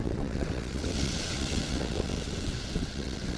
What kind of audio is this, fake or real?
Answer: fake